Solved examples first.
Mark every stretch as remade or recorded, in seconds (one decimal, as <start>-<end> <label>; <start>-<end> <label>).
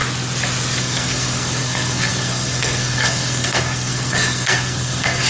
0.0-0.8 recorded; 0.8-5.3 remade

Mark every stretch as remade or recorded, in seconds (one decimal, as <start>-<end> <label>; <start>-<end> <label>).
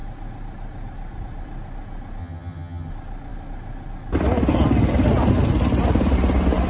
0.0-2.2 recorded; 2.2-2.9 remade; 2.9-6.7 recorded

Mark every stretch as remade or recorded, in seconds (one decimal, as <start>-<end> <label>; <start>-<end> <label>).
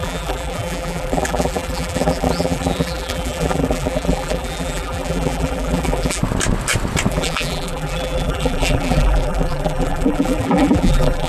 0.0-6.2 remade; 6.2-7.1 recorded; 7.1-11.3 remade